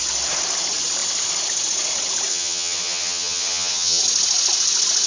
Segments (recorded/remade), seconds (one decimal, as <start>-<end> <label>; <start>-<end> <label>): 0.0-2.3 recorded; 2.3-4.0 remade; 4.0-5.1 recorded